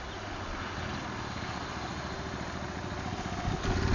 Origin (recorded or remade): recorded